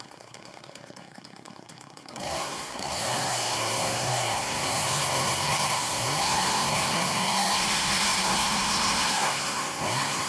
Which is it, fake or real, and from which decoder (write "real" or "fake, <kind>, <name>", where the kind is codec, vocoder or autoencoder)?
fake, codec, SNAC